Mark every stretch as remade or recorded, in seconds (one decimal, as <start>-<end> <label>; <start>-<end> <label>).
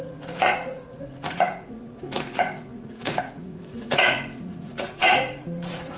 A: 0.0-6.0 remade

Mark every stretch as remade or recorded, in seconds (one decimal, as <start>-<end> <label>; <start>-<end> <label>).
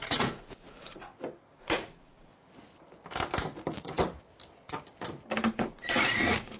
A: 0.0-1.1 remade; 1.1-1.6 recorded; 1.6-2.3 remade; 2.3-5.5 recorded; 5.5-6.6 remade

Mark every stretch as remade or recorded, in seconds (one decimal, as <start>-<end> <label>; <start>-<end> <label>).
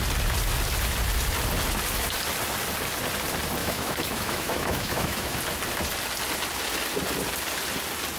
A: 0.0-3.6 recorded; 3.6-5.4 remade; 5.4-8.2 recorded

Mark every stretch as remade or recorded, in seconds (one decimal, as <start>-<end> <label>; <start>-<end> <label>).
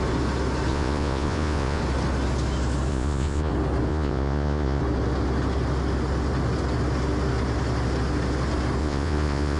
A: 0.0-0.7 recorded; 0.7-1.8 remade; 1.8-2.9 recorded; 2.9-3.5 remade; 3.5-3.9 recorded; 3.9-4.8 remade; 4.8-8.8 recorded; 8.8-9.6 remade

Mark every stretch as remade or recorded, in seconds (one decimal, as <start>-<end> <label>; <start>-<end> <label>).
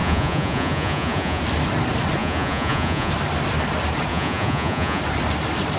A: 0.0-1.4 remade; 1.4-2.2 recorded; 2.2-3.1 remade; 3.1-4.1 recorded; 4.1-5.0 remade; 5.0-5.8 recorded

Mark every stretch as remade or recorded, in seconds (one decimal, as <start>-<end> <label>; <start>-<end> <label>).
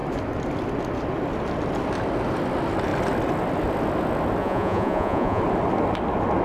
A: 0.0-4.4 recorded; 4.4-5.4 remade; 5.4-6.4 recorded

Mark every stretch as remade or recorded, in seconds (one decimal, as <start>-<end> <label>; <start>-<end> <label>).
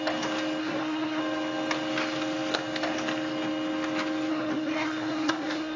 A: 0.0-0.6 recorded; 0.6-1.2 remade; 1.2-4.3 recorded; 4.3-5.8 remade